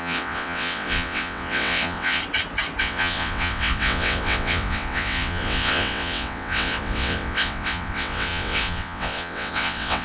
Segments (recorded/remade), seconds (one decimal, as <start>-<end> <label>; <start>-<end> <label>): 0.0-2.2 remade; 2.2-2.8 recorded; 2.8-10.0 remade